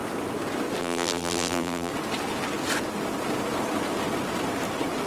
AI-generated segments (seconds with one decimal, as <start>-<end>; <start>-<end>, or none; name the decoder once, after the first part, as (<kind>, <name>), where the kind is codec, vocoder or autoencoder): 0.8-1.9 (vocoder, BigVGAN v2)

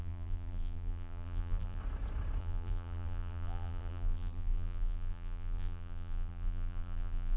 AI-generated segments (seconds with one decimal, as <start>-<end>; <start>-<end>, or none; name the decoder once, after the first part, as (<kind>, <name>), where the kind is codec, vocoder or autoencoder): 0.0-1.8 (vocoder, BigVGAN v2); 2.4-7.4

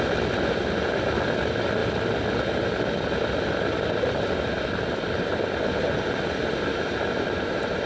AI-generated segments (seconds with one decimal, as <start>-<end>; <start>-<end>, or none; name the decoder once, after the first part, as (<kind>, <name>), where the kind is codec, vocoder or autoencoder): 6.7-7.9 (vocoder, BigVGAN v2)

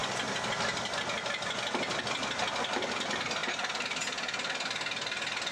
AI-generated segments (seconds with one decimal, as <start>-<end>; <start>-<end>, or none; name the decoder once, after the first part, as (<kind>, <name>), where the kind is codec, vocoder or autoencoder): none

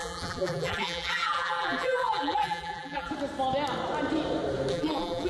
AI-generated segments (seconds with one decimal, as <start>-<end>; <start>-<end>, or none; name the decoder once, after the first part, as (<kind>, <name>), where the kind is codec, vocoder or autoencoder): 0.0-3.1 (vocoder, BigVGAN v2); 4.7-5.3

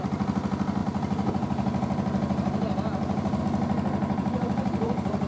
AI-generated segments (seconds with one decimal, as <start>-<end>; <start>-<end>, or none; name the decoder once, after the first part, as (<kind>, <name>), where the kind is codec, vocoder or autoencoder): 0.8-3.4 (vocoder, BigVGAN v2); 4.0-5.3

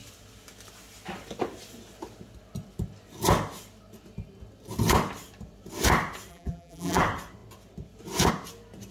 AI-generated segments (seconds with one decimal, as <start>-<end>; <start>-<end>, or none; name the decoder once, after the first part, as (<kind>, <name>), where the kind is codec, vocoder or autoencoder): 6.3-7.0 (vocoder, BigVGAN v2)

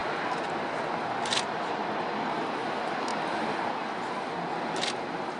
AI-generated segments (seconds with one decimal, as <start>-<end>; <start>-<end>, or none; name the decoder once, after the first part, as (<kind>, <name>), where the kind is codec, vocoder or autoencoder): none